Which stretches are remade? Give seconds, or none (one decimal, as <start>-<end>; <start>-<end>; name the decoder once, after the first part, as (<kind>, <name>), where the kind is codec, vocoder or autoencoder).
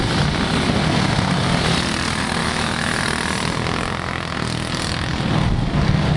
2.4-3.0 (autoencoder, DAC-VAE)